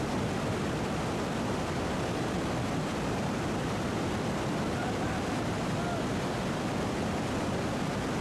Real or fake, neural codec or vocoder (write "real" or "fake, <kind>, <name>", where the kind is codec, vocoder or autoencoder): real